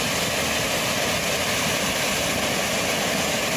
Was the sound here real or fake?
real